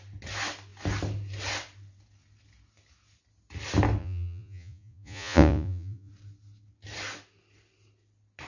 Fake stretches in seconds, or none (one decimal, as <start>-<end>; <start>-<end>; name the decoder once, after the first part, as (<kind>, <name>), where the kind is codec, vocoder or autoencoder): 4.0-6.1 (vocoder, Vocos)